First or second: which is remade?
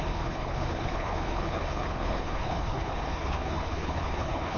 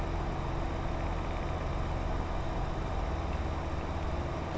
first